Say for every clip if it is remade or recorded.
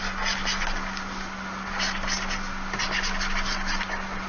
recorded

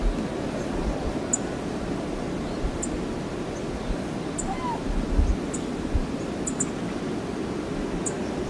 recorded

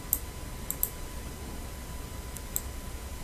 recorded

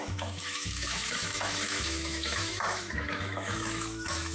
remade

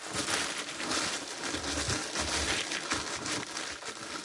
recorded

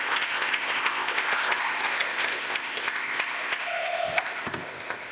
remade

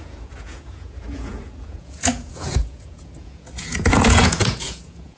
remade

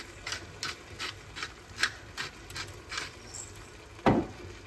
recorded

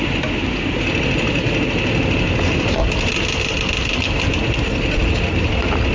recorded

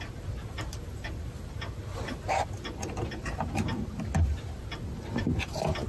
recorded